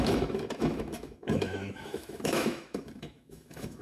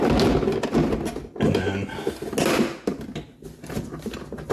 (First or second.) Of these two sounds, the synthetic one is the first